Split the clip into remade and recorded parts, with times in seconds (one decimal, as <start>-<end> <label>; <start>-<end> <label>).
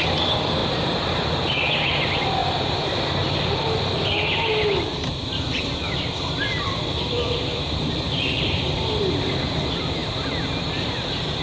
0.0-0.6 recorded; 0.6-1.3 remade; 1.3-2.4 recorded; 2.4-2.9 remade; 2.9-5.8 recorded; 5.8-9.1 remade; 9.1-11.4 recorded